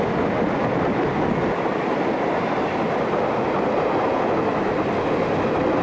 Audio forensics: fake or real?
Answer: real